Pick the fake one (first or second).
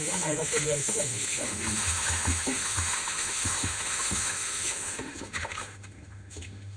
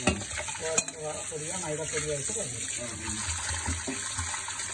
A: first